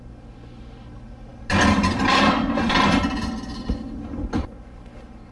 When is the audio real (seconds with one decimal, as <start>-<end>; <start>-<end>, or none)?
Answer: 0.0-5.3